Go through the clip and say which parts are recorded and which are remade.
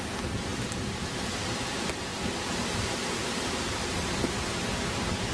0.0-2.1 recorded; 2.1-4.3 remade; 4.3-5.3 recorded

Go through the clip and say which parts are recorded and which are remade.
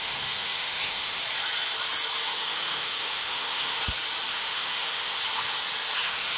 0.0-1.2 remade; 1.2-2.3 recorded; 2.3-3.8 remade; 3.8-4.3 recorded; 4.3-5.1 remade; 5.1-6.0 recorded; 6.0-6.4 remade